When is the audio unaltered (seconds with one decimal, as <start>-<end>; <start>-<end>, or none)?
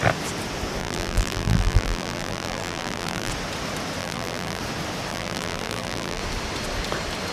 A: 0.0-0.8; 3.3-4.0; 4.6-5.1; 6.2-7.3